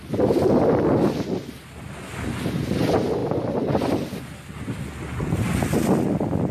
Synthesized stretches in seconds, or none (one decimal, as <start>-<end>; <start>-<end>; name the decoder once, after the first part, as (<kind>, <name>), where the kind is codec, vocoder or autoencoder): none